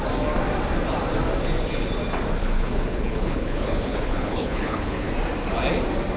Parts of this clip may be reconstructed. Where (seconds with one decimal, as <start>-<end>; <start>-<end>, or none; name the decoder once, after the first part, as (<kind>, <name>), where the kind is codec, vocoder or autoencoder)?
2.4-5.1 (codec, HILCodec)